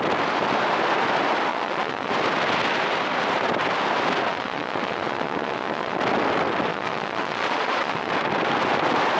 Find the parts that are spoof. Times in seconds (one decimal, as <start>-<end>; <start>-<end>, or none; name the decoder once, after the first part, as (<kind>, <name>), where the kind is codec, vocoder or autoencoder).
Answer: 1.5-2.1 (vocoder, Vocos); 4.3-6.0; 6.7-8.1